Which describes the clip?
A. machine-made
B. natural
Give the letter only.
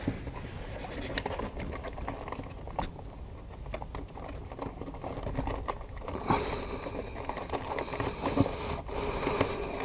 B